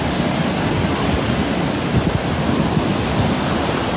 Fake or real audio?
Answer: real